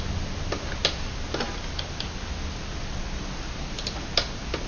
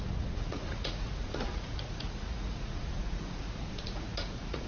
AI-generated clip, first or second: second